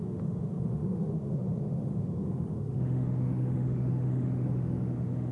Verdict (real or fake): fake